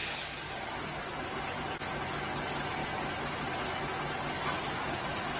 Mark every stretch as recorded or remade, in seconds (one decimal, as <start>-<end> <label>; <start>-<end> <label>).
0.0-5.4 recorded